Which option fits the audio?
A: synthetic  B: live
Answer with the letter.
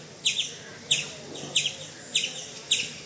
B